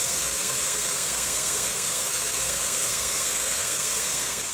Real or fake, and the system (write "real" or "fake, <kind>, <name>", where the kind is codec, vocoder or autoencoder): fake, codec, SNAC